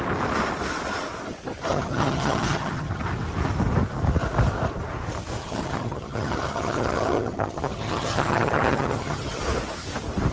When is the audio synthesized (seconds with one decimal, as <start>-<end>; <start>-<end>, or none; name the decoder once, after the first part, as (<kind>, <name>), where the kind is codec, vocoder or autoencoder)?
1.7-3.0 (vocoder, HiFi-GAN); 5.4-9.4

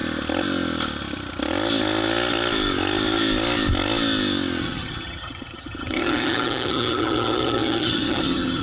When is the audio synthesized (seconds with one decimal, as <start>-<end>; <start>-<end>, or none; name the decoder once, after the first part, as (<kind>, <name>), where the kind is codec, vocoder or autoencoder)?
4.6-8.6 (vocoder, HiFi-GAN)

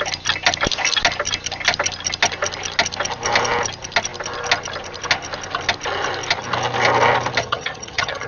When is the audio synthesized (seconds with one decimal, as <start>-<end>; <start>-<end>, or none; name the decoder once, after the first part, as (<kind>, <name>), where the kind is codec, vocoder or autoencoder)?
7.4-8.3 (vocoder, HiFi-GAN)